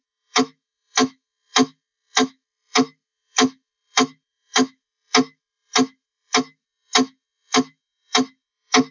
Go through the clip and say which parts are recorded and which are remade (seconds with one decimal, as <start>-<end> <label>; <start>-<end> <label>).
0.0-8.9 remade